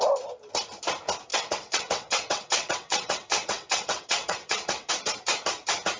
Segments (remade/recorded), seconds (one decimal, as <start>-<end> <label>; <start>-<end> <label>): 0.0-1.3 recorded; 1.3-4.9 remade; 4.9-6.0 recorded